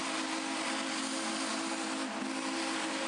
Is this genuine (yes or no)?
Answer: yes